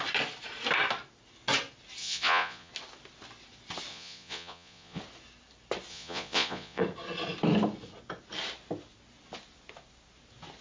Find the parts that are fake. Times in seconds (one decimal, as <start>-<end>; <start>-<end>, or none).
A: 2.0-2.7; 3.9-5.0; 5.9-6.8